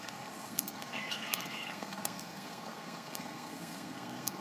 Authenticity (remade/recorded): remade